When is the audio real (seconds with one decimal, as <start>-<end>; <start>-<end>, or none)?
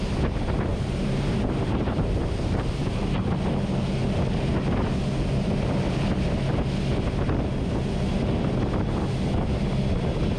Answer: 0.0-0.7; 3.0-10.4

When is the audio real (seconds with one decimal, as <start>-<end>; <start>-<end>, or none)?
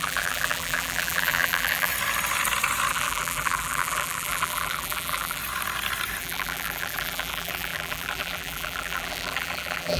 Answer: 1.9-2.9; 5.4-6.2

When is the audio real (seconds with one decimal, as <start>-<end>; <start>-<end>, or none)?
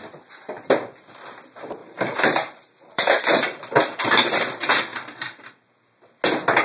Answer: 0.0-1.8; 3.2-4.9; 5.5-6.6